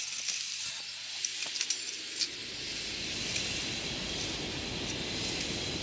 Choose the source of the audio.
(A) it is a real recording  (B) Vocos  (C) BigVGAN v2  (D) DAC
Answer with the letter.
A